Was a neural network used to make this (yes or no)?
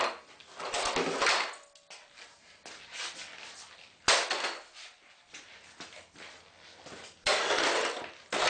no